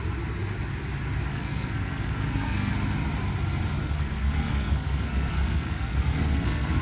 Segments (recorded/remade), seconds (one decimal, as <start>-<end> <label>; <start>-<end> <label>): 0.0-1.3 recorded; 1.3-2.7 remade; 2.7-3.8 recorded; 3.8-6.8 remade